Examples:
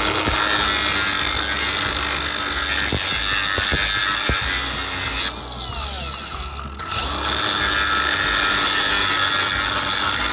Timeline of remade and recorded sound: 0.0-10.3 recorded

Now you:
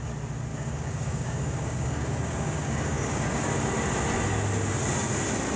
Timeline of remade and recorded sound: 0.0-0.5 recorded; 0.5-3.5 remade; 3.5-5.6 recorded

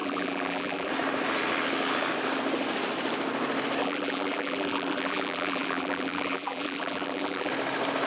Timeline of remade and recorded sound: 0.0-0.9 remade; 0.9-3.8 recorded; 3.8-7.5 remade; 7.5-8.1 recorded

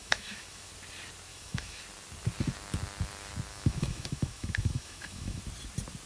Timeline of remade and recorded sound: 0.0-0.7 remade; 0.7-1.3 recorded; 1.3-1.8 remade; 1.8-3.5 recorded; 3.5-5.4 remade; 5.4-6.1 recorded